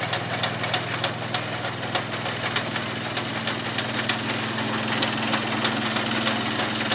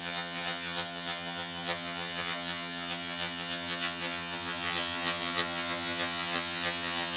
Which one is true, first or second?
first